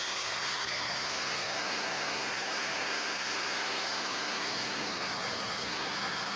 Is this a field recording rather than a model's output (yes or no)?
no